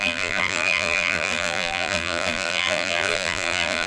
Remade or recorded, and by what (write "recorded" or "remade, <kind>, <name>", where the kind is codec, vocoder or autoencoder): remade, vocoder, BigVGAN v2